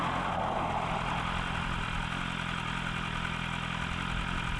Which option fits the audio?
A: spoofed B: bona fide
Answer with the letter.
B